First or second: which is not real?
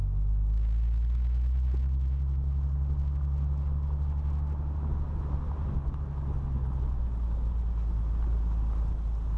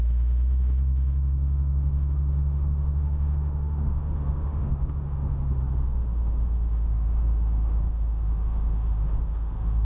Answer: second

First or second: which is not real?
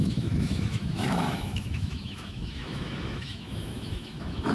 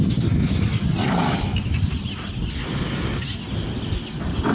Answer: first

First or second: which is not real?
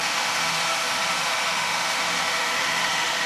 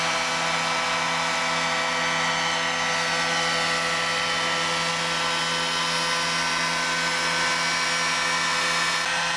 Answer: first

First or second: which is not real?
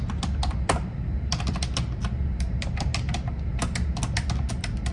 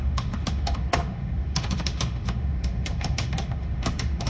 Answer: second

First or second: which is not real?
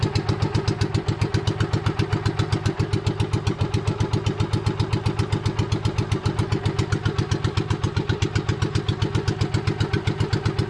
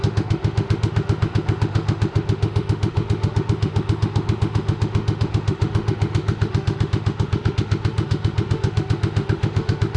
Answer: second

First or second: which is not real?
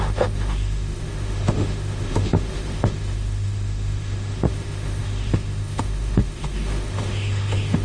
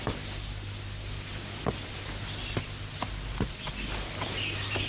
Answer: first